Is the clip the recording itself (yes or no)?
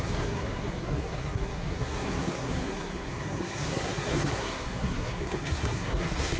no